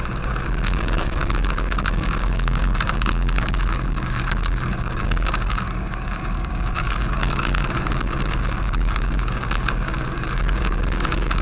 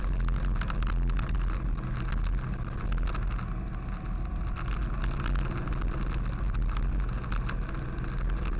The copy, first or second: first